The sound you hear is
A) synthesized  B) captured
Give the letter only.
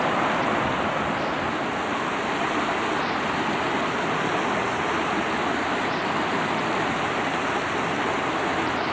B